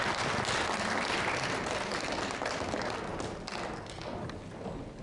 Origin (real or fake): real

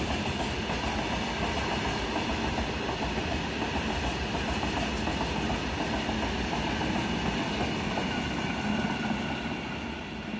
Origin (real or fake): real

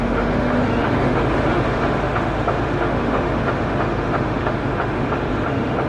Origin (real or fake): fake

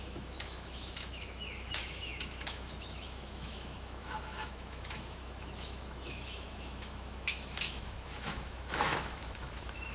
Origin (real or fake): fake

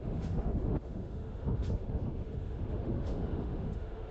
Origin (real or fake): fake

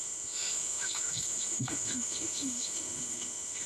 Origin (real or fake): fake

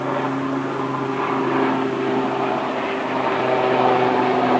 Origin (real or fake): real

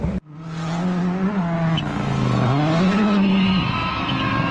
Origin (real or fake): real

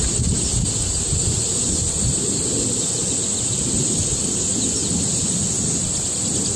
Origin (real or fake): real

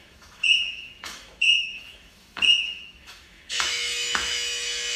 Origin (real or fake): fake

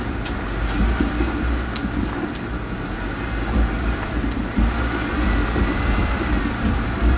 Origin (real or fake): real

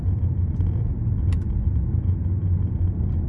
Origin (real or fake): real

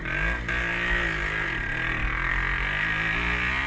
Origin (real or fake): real